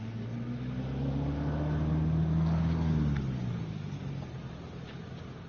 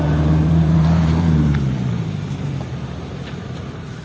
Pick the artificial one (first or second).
second